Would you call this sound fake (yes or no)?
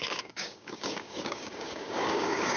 yes